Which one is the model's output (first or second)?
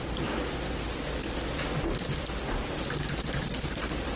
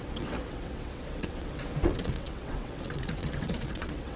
second